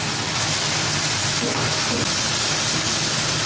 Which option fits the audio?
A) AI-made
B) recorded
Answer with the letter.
B